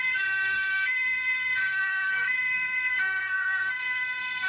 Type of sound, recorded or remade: remade